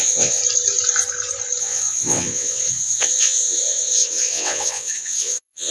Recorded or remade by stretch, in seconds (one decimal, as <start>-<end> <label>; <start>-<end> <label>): 0.0-0.4 remade; 0.4-1.6 recorded; 1.6-5.7 remade

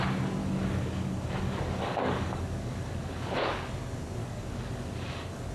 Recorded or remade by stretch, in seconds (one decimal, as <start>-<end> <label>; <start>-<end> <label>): 0.0-0.4 recorded; 0.4-3.7 remade; 3.7-4.2 recorded; 4.2-5.5 remade